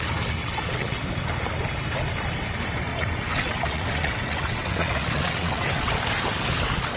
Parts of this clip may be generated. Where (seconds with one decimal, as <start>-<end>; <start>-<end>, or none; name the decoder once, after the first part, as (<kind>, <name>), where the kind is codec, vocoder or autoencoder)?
0.4-1.0 (vocoder, WaveNeXt); 2.9-5.9